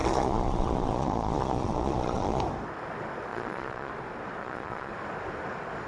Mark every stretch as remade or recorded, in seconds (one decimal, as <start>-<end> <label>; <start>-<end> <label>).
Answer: 0.0-2.4 remade; 2.4-3.3 recorded; 3.3-3.9 remade; 3.9-4.4 recorded; 4.4-4.9 remade; 4.9-5.9 recorded